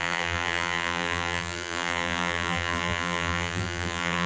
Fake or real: fake